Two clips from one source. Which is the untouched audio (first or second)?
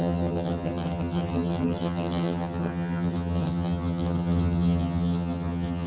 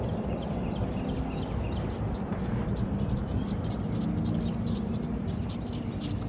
second